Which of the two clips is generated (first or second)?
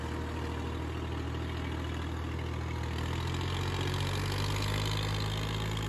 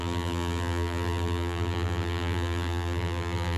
second